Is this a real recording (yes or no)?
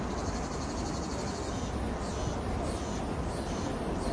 yes